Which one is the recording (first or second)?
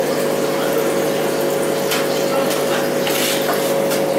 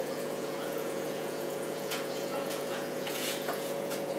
first